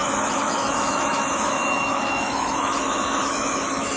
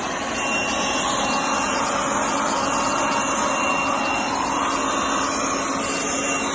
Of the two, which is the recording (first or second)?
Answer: second